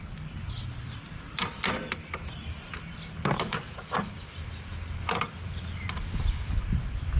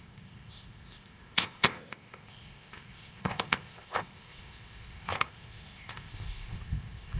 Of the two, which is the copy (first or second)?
second